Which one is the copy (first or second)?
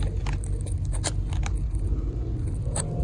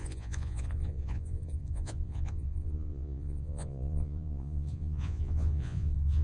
second